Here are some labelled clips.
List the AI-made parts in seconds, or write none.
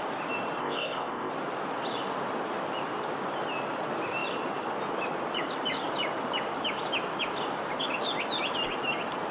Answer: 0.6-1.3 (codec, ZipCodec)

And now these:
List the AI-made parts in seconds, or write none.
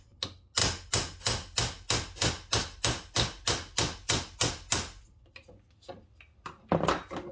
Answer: none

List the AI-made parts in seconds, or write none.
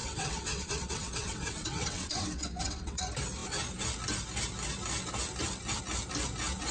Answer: 0.0-3.0 (vocoder, WaveNeXt)